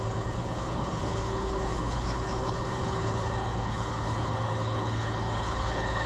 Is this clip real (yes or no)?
no